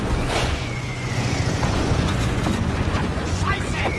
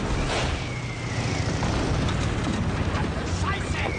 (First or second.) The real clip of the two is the second